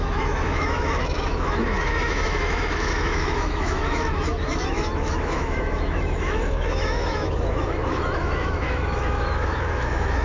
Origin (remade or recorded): remade